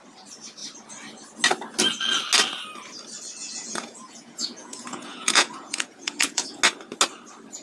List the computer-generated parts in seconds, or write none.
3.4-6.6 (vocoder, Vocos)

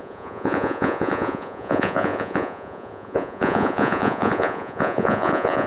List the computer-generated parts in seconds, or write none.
0.0-5.7 (vocoder, Vocos)

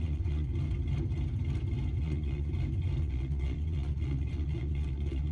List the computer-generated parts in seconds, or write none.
0.0-0.5 (vocoder, Vocos); 2.0-2.5; 3.0-5.3

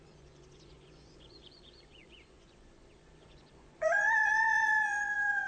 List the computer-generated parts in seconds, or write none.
0.0-5.5 (vocoder, Vocos)

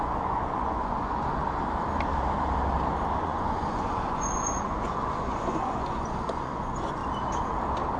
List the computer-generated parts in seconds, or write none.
0.0-1.4 (vocoder, Vocos); 3.2-7.0